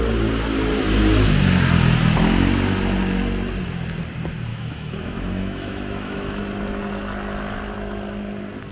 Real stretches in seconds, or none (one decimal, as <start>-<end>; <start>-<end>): 0.0-4.5; 6.4-8.7